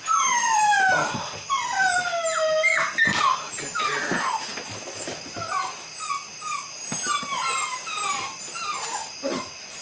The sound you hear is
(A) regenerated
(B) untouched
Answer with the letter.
B